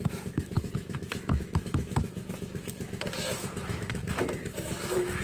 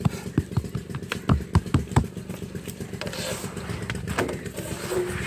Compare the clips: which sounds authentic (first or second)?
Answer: second